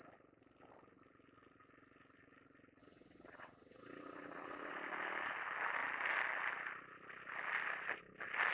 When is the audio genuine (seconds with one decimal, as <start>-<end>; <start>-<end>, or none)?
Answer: 0.0-2.8; 4.7-8.5